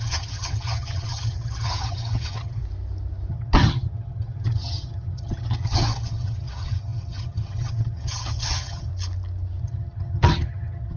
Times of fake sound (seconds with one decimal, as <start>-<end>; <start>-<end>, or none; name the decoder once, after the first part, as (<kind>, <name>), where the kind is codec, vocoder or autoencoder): 0.0-2.6 (vocoder, HiFi-GAN); 3.3-8.9; 9.6-11.0